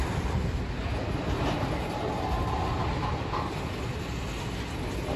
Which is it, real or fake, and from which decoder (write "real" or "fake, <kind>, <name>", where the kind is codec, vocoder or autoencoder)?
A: real